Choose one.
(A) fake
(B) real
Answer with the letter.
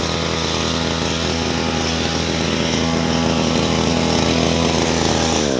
B